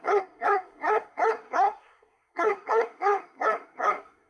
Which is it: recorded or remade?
remade